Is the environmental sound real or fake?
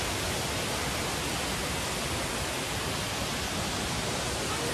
real